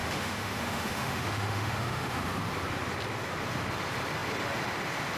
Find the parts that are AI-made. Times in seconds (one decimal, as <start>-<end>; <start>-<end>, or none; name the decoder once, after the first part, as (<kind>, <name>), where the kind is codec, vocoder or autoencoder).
0.0-2.3 (autoencoder, DAC-VAE)